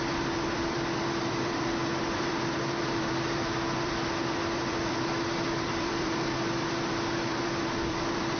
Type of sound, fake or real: fake